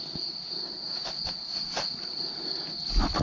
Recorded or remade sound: recorded